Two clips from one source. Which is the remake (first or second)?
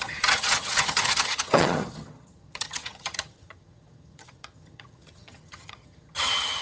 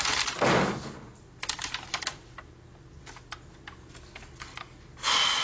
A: first